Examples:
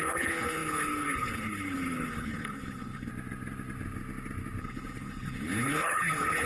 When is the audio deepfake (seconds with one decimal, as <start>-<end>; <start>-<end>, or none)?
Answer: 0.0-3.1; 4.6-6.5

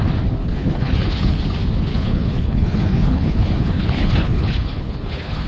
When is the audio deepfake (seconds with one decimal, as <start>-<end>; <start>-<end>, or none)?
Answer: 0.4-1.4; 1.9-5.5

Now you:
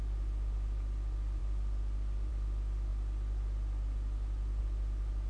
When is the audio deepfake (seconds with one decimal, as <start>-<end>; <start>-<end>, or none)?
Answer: none

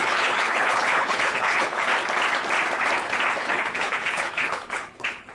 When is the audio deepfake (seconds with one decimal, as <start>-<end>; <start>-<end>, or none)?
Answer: 0.0-1.9; 3.4-5.3

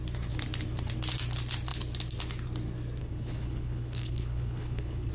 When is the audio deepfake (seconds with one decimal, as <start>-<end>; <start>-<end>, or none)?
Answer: 3.0-5.1

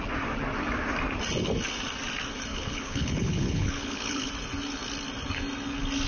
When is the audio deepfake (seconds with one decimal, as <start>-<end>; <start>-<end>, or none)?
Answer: 2.5-4.3